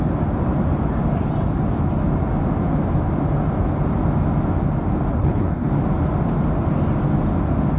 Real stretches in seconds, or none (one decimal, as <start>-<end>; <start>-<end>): 0.0-5.1; 5.7-7.8